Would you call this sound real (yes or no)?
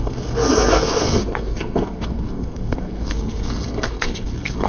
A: no